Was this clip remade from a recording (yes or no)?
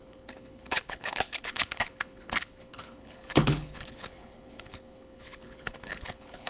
yes